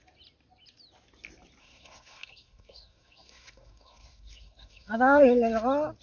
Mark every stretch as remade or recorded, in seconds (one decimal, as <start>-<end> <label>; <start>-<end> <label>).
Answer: 0.0-1.6 recorded; 1.6-5.2 remade; 5.2-6.0 recorded